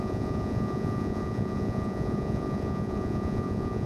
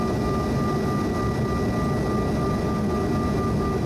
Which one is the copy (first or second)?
first